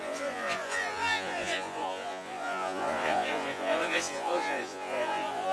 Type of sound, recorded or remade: remade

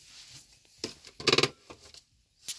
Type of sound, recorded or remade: recorded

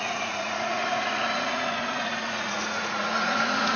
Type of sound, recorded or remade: remade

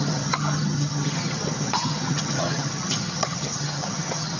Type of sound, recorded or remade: remade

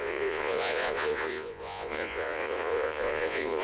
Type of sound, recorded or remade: remade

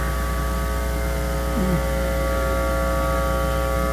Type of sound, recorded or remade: recorded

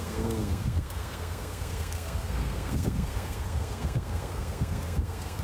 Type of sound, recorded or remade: remade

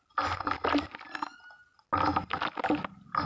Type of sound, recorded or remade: recorded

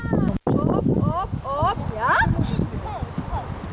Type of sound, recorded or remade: recorded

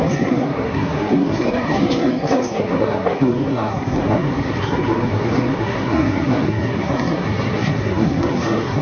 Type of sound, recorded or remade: remade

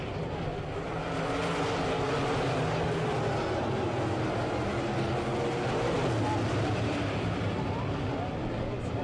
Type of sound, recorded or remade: recorded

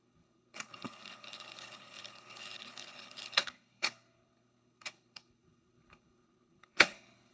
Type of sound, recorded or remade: remade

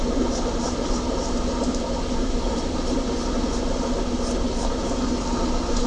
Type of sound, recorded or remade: recorded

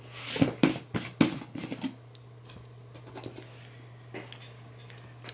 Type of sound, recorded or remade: recorded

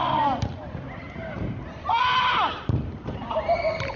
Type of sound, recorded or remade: recorded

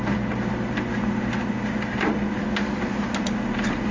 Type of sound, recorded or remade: recorded